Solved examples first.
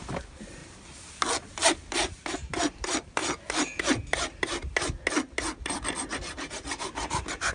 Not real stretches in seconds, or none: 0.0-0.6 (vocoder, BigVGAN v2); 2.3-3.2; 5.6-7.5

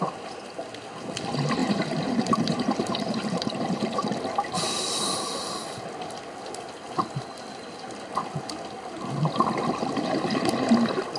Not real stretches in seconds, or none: 1.6-5.0 (vocoder, BigVGAN v2)

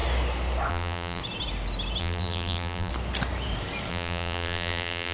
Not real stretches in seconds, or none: 0.7-1.2 (vocoder, BigVGAN v2); 2.0-2.9; 3.9-5.1

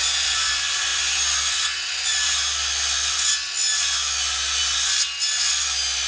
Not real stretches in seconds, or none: none

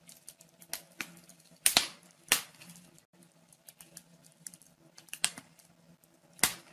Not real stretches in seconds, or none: 1.3-3.7 (vocoder, BigVGAN v2); 4.3-5.4